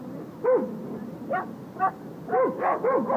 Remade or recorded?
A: recorded